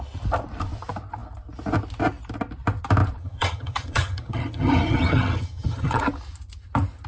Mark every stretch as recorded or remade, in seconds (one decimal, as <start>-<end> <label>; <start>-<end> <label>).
0.0-3.2 recorded; 3.2-6.0 remade; 6.0-7.1 recorded